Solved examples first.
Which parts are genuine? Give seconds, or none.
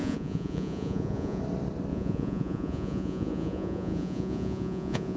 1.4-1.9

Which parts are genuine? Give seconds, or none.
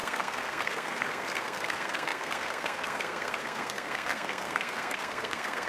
none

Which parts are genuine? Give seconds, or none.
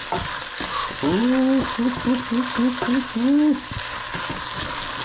0.0-5.0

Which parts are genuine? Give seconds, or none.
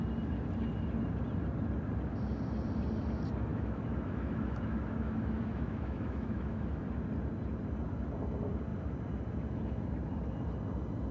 0.0-3.5; 6.8-11.1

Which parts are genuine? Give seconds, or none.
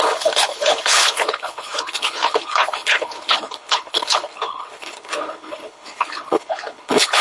none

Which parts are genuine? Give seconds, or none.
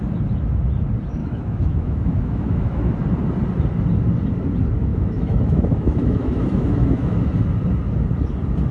0.0-1.2; 2.9-4.9; 7.3-8.7